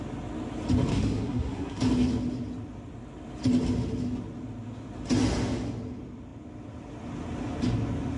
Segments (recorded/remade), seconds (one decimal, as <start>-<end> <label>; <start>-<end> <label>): 0.0-0.9 recorded; 0.9-1.8 remade; 1.8-8.2 recorded